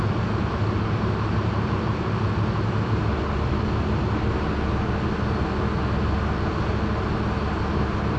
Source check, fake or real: real